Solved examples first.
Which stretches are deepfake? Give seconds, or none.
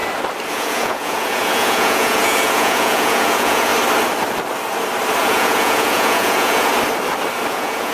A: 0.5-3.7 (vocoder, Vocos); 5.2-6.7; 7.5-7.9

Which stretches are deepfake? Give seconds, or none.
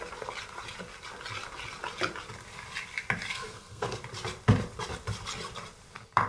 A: 3.3-4.0 (codec, SNAC)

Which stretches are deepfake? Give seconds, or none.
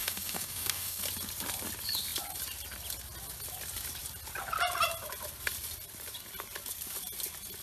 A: 0.0-1.0 (codec, DAC)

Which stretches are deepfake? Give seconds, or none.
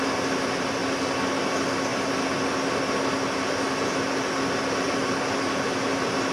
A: none